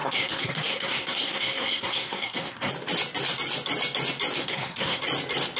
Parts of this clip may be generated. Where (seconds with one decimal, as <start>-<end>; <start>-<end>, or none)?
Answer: 0.0-2.7; 4.4-5.0